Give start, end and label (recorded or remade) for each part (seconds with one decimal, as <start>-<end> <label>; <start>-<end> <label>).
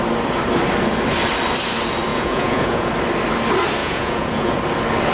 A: 0.0-2.1 recorded; 2.1-2.9 remade; 2.9-3.8 recorded; 3.8-4.6 remade; 4.6-5.1 recorded